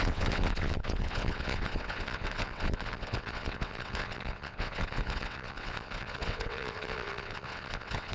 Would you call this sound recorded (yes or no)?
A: no